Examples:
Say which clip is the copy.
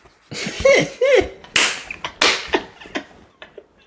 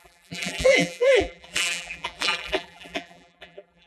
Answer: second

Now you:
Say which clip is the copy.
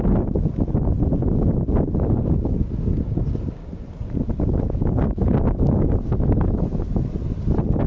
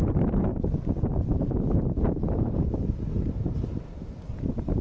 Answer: second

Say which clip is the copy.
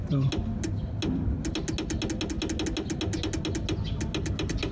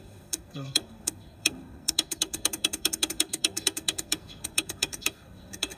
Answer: second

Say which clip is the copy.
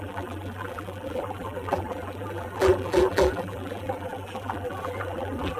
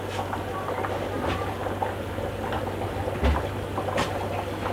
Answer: first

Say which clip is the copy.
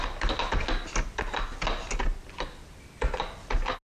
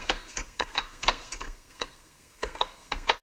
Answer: second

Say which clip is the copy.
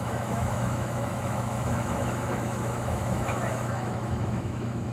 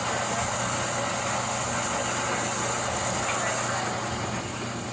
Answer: first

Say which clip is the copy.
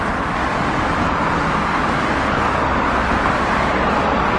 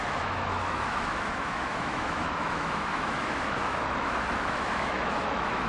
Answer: second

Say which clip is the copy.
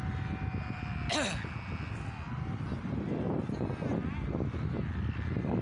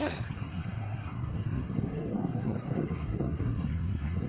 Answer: second